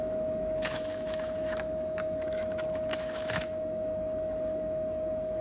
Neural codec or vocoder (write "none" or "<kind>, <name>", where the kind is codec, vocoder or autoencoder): autoencoder, DAC-VAE